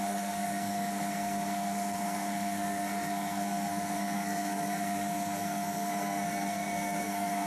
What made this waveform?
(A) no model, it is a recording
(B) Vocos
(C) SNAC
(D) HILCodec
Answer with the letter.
C